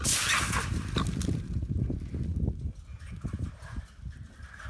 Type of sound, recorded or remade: recorded